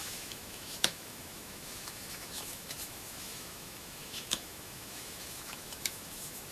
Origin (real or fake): fake